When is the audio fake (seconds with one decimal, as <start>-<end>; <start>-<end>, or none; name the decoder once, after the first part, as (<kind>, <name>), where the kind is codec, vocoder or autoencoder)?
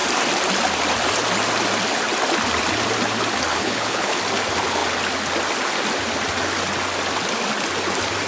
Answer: 3.5-4.2 (codec, HILCodec)